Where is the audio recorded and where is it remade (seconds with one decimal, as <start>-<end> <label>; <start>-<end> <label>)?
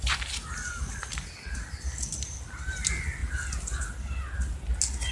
0.0-5.1 recorded